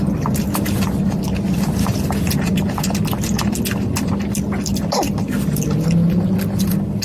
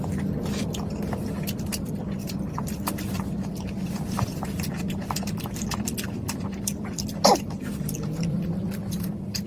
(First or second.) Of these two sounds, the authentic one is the first